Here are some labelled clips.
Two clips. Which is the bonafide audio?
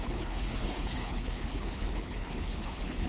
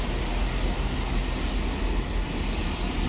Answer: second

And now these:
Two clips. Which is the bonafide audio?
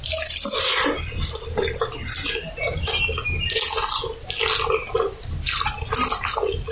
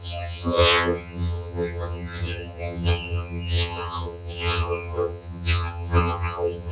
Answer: first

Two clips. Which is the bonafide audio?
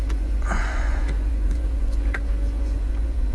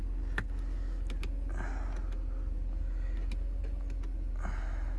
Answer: second